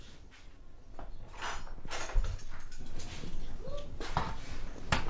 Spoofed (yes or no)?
no